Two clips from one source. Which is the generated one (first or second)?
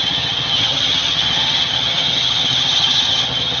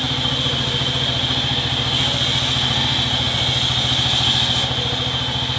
first